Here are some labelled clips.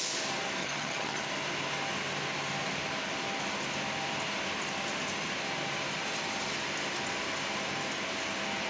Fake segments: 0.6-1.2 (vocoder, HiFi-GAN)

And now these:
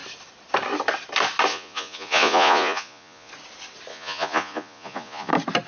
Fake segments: 1.5-3.3 (vocoder, Vocos); 3.9-5.3